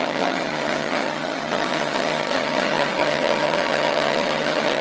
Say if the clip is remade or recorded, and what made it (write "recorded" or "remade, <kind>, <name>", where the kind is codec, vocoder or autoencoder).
remade, vocoder, HiFi-GAN